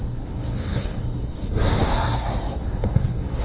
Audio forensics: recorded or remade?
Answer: remade